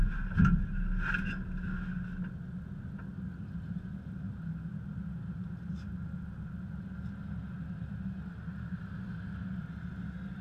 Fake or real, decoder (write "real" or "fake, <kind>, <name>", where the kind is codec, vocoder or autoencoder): real